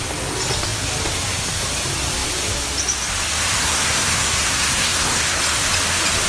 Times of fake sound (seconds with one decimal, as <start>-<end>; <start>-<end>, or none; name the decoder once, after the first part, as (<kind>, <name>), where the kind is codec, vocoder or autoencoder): 3.6-5.4 (codec, SNAC)